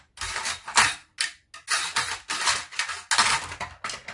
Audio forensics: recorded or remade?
recorded